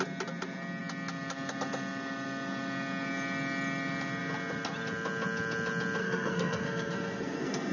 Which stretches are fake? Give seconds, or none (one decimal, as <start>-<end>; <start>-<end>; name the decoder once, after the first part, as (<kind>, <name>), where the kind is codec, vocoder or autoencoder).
6.0-7.7 (codec, SNAC)